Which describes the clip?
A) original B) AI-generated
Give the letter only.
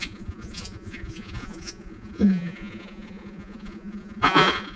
B